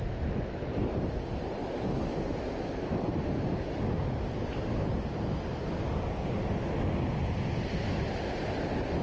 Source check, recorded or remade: recorded